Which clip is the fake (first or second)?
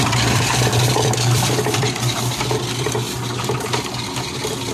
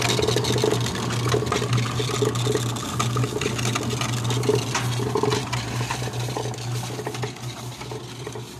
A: first